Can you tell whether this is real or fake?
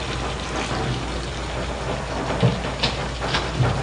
real